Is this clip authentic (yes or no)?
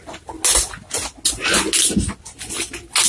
yes